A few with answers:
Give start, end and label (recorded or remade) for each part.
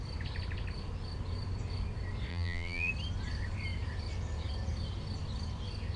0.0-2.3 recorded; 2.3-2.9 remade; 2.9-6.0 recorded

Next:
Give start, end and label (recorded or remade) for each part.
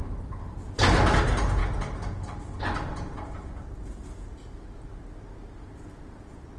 0.0-6.6 recorded